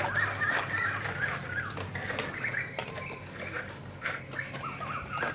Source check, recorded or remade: recorded